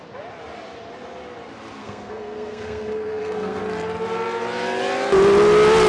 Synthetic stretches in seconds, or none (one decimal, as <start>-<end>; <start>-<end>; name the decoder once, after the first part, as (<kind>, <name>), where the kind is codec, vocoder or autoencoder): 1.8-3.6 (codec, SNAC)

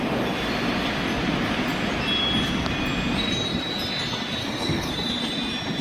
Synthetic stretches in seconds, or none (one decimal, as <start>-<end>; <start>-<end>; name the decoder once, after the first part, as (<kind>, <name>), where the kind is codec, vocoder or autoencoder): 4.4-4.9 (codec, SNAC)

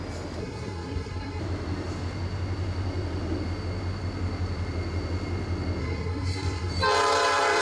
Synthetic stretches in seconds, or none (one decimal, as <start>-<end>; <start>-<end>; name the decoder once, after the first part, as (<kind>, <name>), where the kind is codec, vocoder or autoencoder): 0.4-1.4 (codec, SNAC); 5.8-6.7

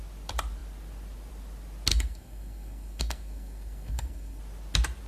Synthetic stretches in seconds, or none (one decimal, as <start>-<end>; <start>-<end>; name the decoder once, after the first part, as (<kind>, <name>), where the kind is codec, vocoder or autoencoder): 1.9-4.4 (codec, SNAC)

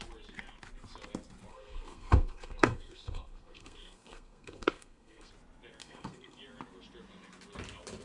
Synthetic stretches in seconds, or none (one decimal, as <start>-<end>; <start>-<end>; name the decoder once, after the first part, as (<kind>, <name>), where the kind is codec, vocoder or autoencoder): 1.5-5.3 (codec, SNAC); 5.8-6.4

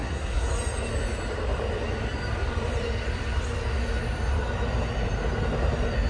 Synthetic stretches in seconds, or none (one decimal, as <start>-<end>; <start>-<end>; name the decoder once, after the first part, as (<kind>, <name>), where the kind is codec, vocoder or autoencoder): 0.0-0.5 (codec, SNAC)

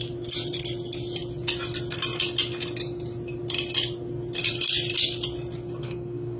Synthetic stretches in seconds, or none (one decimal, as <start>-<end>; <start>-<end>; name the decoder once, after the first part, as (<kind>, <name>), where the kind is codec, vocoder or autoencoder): 5.8-6.4 (codec, SNAC)